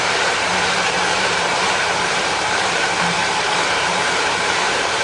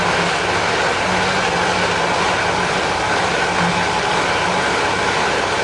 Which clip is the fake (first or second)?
first